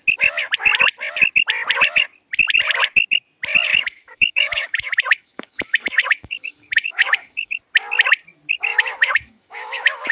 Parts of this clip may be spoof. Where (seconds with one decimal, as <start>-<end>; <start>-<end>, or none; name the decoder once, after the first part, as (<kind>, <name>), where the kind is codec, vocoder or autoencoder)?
3.7-7.6 (autoencoder, DAC-VAE); 8.7-10.1